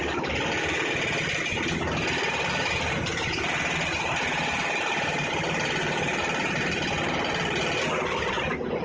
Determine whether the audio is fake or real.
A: fake